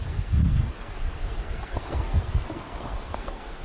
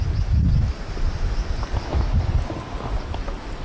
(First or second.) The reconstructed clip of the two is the first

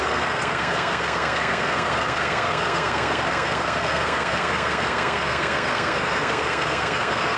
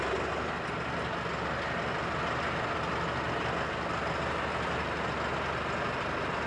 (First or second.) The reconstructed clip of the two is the first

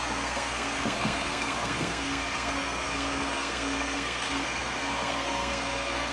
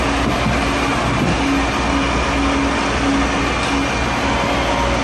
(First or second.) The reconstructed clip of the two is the first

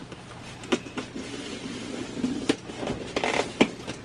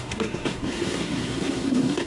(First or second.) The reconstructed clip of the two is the second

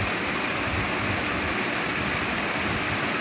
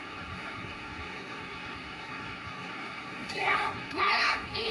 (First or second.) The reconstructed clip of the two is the second